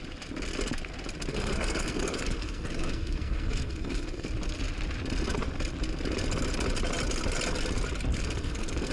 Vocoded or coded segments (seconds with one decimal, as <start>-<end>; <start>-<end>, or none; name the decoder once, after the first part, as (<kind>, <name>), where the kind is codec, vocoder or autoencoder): 1.3-4.3 (codec, SNAC); 8.1-8.9